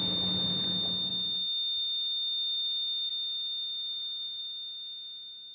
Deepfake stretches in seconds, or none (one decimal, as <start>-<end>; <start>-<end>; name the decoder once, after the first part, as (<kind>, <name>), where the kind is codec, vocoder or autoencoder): 3.9-4.4 (codec, DAC)